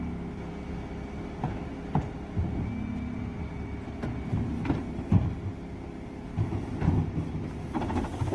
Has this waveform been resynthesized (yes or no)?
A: no